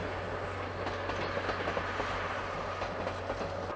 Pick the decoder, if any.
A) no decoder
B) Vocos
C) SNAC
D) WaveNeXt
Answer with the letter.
A